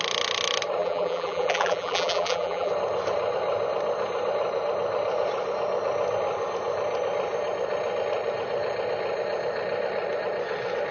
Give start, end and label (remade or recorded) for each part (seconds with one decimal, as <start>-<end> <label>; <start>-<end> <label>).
0.0-0.8 recorded; 0.8-2.7 remade; 2.7-10.9 recorded